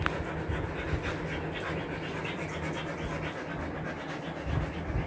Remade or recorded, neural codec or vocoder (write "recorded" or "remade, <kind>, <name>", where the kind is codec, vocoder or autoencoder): recorded